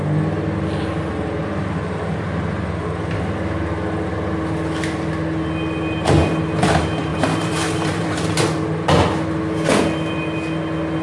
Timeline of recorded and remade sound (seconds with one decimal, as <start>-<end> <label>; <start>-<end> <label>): 0.0-1.1 recorded; 1.1-3.1 remade; 3.1-7.1 recorded; 7.1-8.4 remade; 8.4-11.0 recorded

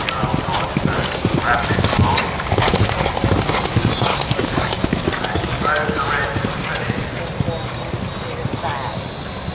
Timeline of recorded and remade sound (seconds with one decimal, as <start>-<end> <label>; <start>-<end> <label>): 0.0-4.1 recorded; 4.1-6.0 remade; 6.0-9.5 recorded

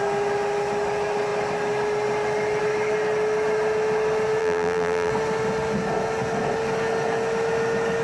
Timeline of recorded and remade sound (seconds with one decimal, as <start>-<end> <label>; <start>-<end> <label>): 0.0-4.4 recorded; 4.4-5.1 remade; 5.1-8.0 recorded

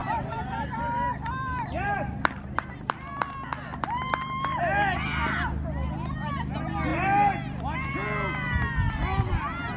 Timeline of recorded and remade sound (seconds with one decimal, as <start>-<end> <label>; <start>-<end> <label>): 0.0-2.7 remade; 2.7-9.8 recorded

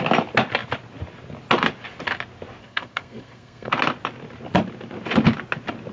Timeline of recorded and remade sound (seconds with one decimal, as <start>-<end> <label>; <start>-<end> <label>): 0.0-2.6 recorded; 2.6-3.7 remade; 3.7-5.9 recorded

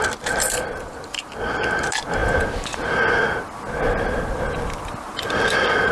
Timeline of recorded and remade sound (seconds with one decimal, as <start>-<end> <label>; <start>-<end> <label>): 0.0-5.9 recorded

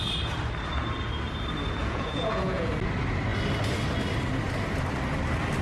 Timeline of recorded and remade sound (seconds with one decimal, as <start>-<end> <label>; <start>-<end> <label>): 0.0-1.8 recorded; 1.8-2.7 remade; 2.7-5.6 recorded

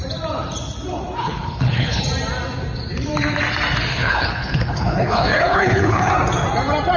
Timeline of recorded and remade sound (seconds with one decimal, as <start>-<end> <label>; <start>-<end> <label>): 0.0-1.2 recorded; 1.2-2.0 remade; 2.0-3.9 recorded; 3.9-6.1 remade; 6.1-7.0 recorded